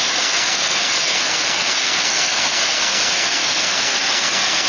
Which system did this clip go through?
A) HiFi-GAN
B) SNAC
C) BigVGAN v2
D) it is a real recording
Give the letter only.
B